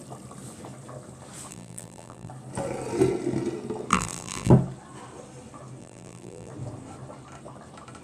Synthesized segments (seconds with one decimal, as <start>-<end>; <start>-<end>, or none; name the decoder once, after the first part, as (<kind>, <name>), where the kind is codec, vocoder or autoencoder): 1.5-2.3 (vocoder, BigVGAN v2); 3.9-4.5; 5.8-6.5

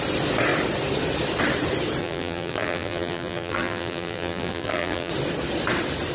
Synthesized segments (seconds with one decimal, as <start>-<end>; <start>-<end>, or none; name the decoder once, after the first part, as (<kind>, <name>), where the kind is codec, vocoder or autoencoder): 2.0-5.1 (vocoder, BigVGAN v2)

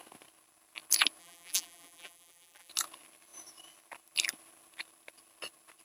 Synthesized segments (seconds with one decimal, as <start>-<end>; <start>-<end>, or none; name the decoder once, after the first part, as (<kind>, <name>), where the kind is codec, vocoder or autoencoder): 1.2-2.7 (vocoder, BigVGAN v2)